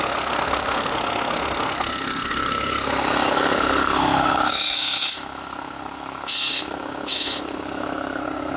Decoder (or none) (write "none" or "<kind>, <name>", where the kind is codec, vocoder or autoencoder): codec, SNAC